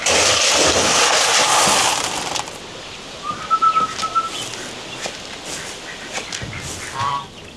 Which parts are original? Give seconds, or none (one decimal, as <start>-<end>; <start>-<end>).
0.0-7.6